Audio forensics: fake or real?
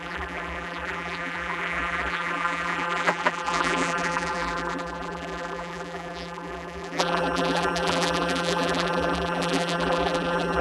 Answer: fake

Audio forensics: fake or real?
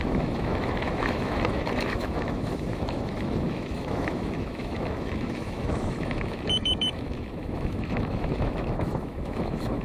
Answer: fake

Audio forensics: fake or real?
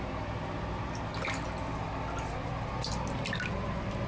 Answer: real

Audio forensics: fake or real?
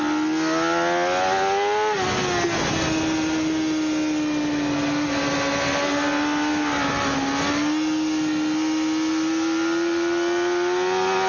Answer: real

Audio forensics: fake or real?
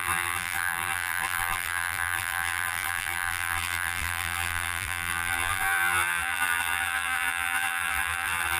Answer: fake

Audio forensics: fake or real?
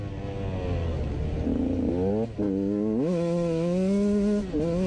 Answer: real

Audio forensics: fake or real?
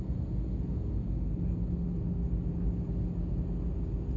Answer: real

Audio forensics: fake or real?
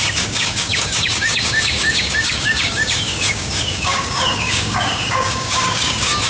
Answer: fake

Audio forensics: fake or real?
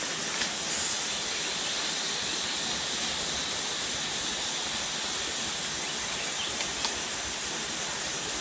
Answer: real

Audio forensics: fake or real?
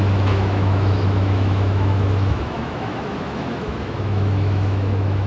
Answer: fake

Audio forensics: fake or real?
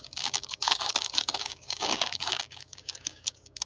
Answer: fake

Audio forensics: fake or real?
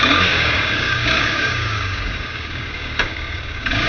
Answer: fake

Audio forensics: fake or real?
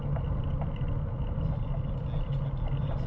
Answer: real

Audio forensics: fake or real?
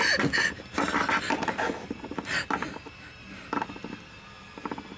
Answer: real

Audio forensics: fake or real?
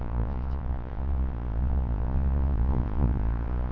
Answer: fake